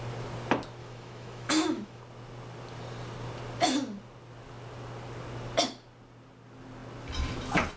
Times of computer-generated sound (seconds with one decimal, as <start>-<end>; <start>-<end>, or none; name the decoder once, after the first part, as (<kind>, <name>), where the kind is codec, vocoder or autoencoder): 0.8-2.0 (autoencoder, DAC-VAE)